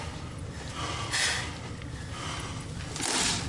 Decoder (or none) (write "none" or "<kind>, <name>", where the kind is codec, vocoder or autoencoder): none